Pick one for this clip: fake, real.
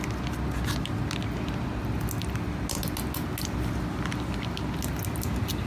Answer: real